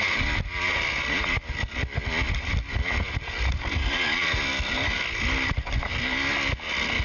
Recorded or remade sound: recorded